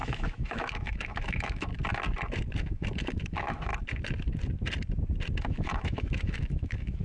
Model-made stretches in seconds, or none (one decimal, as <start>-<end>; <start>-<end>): 0.0-1.7; 2.6-3.7; 5.4-7.0